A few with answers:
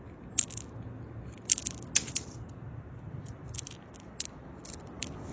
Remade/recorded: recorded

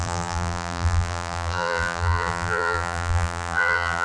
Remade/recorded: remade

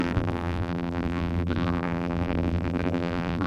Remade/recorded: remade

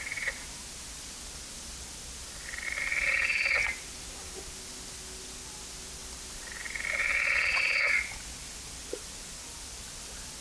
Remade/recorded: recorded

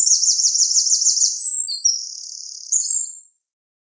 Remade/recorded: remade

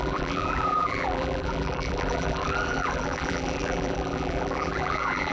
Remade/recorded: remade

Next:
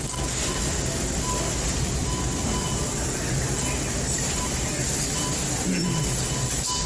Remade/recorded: recorded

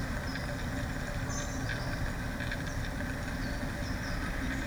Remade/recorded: recorded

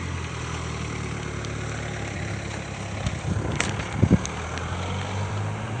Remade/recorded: remade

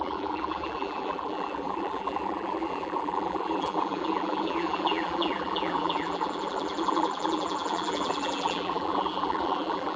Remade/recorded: remade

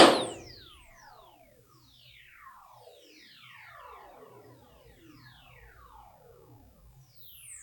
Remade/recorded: remade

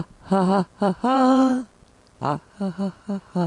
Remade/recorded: remade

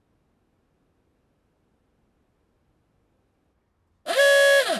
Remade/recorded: recorded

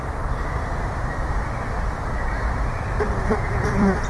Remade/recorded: remade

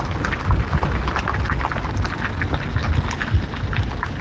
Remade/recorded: recorded